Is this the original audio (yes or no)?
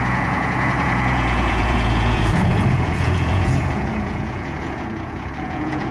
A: no